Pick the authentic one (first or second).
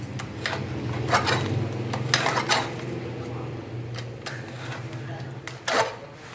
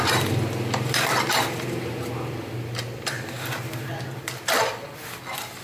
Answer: first